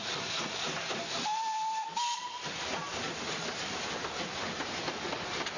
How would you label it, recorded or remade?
remade